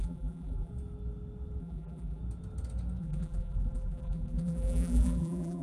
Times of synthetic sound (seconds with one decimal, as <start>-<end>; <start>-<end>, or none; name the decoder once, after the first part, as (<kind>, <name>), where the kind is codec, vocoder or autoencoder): 0.0-0.7 (vocoder, BigVGAN v2); 1.6-2.2; 3.0-5.6